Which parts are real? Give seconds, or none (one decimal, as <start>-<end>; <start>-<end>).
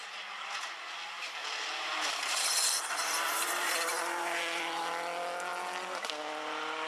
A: 0.0-1.4; 4.9-6.9